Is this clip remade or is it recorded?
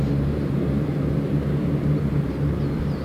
remade